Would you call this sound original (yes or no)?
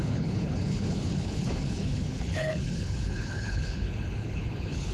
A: no